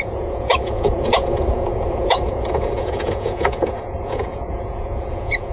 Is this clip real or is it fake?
fake